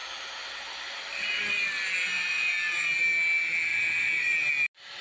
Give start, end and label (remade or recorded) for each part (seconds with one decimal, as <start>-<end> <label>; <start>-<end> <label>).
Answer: 0.0-3.0 remade; 3.0-3.7 recorded; 3.7-4.5 remade; 4.5-5.0 recorded